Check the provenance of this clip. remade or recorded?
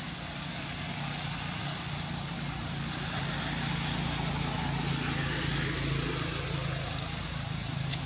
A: recorded